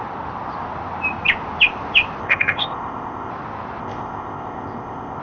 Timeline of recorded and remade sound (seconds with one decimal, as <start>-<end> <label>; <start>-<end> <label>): 0.0-2.2 recorded; 2.2-3.3 remade; 3.3-3.8 recorded; 3.8-5.2 remade

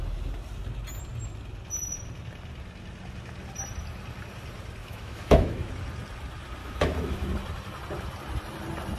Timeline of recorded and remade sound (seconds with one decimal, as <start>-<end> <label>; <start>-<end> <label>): 0.0-4.8 recorded; 4.8-5.7 remade; 5.7-6.6 recorded; 6.6-7.3 remade; 7.3-9.0 recorded

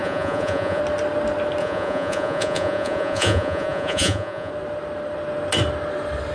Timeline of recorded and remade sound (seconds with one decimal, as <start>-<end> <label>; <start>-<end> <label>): 0.0-0.8 remade; 0.8-1.6 recorded; 1.6-4.5 remade; 4.5-6.3 recorded

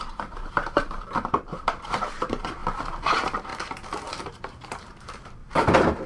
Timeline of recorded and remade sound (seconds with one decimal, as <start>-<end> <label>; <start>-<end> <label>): 0.0-3.5 remade; 3.5-4.1 recorded; 4.1-5.4 remade; 5.4-6.1 recorded

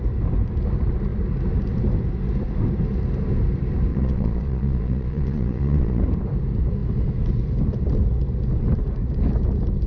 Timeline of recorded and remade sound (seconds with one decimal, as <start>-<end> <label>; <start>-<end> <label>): 0.0-3.9 recorded; 3.9-6.0 remade; 6.0-9.9 recorded

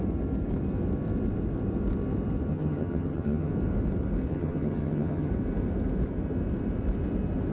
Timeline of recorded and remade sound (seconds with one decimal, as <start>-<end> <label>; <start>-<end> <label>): 0.0-2.5 recorded; 2.5-3.5 remade; 3.5-4.3 recorded; 4.3-5.3 remade; 5.3-7.5 recorded